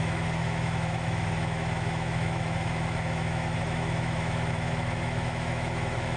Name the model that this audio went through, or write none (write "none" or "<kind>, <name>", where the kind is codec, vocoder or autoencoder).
autoencoder, DAC-VAE